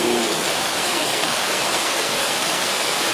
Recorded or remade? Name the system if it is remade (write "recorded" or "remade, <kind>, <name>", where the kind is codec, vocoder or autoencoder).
remade, codec, SNAC